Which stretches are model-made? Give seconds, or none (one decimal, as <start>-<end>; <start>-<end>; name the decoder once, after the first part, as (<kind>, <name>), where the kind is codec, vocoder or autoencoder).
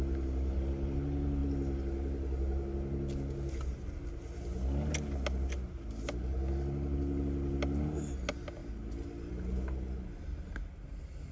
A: none